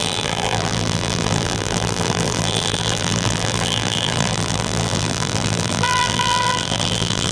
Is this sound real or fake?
fake